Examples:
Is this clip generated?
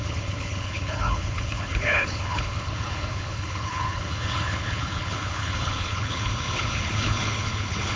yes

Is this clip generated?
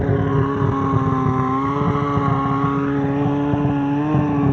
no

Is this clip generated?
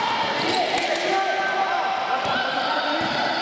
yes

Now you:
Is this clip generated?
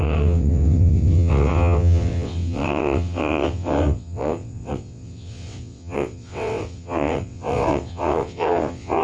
yes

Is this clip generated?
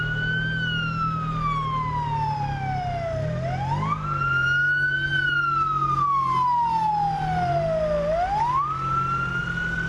no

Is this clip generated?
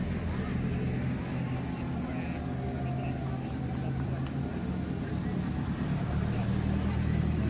no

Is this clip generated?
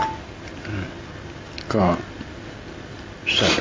no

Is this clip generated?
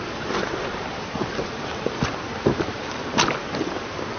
no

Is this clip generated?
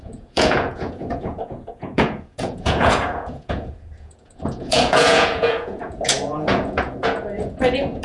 yes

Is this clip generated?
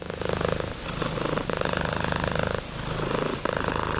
no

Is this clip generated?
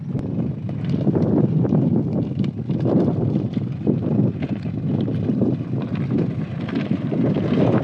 no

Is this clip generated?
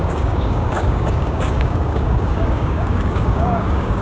yes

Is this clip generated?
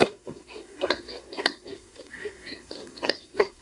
yes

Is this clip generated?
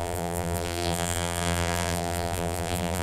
yes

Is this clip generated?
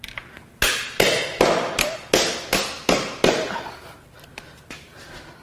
no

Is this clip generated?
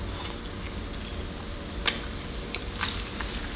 no